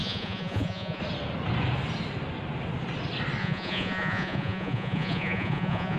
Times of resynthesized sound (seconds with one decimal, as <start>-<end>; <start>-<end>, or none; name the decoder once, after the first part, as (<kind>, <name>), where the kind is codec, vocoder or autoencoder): 0.0-1.0 (vocoder, Vocos); 3.4-6.0